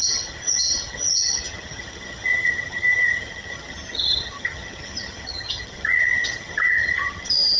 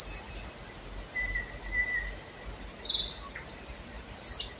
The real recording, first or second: second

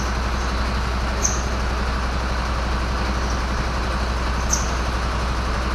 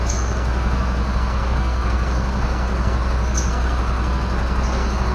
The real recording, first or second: first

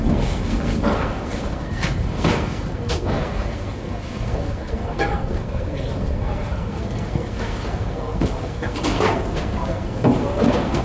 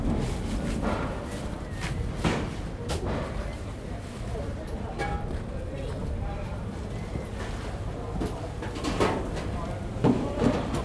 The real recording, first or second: second